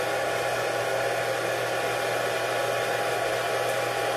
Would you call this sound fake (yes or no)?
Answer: no